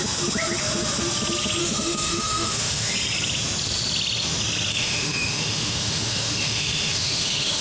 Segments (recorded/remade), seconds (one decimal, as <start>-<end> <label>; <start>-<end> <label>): 0.0-1.6 recorded; 1.6-2.9 remade; 2.9-4.7 recorded; 4.7-7.6 remade